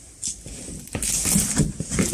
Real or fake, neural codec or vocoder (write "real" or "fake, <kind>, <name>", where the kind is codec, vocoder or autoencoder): real